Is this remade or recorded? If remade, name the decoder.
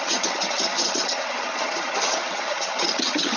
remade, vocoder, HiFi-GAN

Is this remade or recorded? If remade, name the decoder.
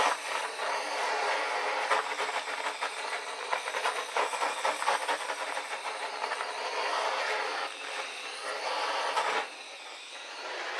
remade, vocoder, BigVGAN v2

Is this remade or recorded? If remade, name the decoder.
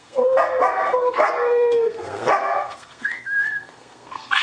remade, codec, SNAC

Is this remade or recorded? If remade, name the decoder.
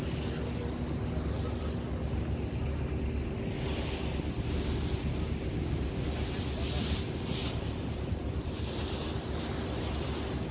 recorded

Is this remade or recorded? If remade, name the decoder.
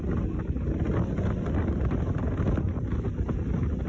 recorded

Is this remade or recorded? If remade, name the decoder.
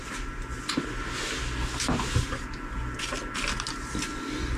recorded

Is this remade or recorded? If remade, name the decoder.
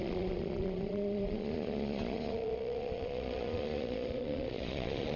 remade, vocoder, Vocos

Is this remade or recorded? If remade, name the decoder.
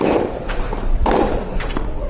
recorded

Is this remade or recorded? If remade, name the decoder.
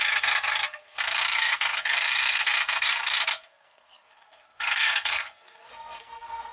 remade, codec, SNAC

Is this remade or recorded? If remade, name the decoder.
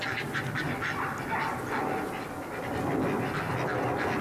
recorded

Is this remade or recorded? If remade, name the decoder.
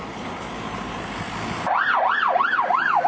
recorded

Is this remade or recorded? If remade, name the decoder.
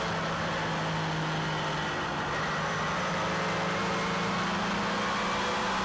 recorded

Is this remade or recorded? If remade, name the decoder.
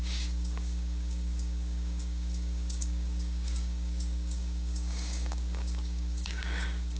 remade, codec, DAC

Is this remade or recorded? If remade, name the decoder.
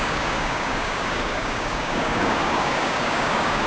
remade, codec, DAC